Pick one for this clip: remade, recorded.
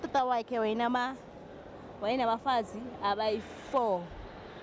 recorded